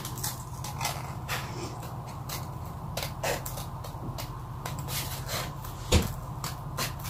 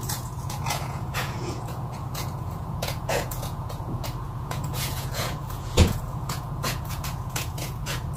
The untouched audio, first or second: first